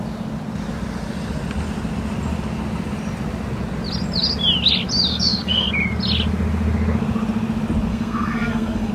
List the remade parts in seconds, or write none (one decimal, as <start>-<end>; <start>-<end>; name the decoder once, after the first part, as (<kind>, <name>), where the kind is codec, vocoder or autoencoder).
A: 5.1-5.7 (codec, SNAC); 7.9-8.9